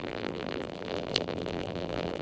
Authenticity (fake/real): fake